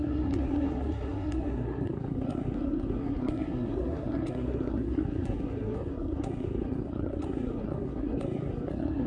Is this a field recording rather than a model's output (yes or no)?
no